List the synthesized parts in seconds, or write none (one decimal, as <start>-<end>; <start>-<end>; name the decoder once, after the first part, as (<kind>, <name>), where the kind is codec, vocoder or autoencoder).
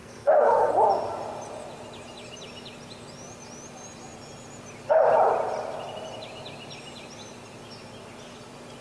0.0-0.7 (codec, SNAC)